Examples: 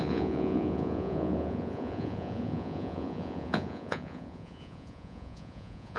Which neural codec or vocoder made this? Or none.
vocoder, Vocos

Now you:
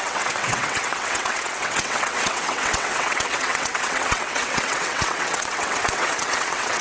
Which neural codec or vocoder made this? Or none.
vocoder, WaveNeXt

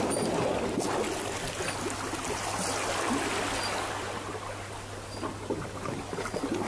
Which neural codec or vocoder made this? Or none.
none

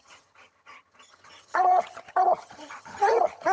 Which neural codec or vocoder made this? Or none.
vocoder, HiFi-GAN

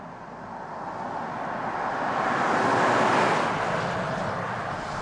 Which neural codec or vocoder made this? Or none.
none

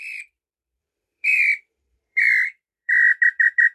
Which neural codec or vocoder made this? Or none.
vocoder, BigVGAN v2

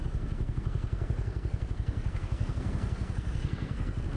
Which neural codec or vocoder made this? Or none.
codec, SNAC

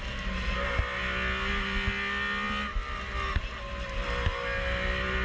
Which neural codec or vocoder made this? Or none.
none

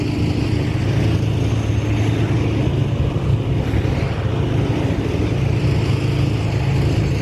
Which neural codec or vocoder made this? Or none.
none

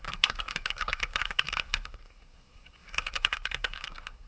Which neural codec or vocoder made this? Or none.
codec, SNAC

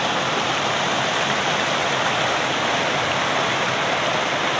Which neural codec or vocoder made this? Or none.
none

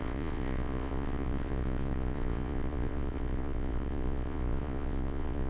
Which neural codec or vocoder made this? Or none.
vocoder, Vocos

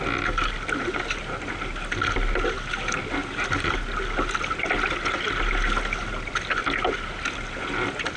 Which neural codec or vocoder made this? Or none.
none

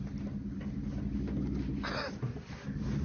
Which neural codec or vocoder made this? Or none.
none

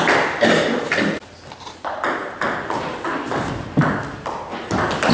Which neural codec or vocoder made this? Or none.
none